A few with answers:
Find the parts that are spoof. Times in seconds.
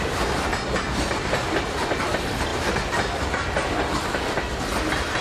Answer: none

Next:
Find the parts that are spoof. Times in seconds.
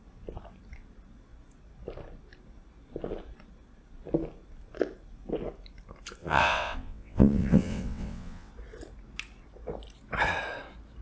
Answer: 6.2-8.5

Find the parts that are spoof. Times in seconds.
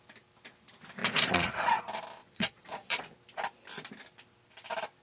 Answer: 1.0-1.5; 2.2-3.0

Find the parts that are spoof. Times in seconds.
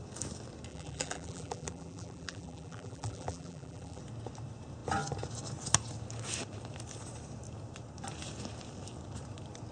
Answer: 0.7-4.0